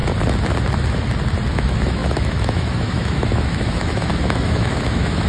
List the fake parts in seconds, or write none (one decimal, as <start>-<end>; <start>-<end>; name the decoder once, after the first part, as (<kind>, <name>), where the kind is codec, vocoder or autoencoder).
1.5-5.3 (autoencoder, DAC-VAE)